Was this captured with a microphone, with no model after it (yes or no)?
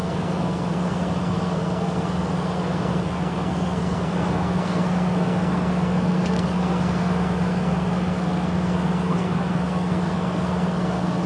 no